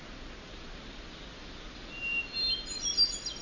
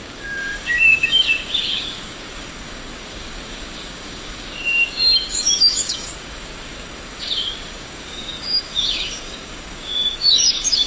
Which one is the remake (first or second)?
second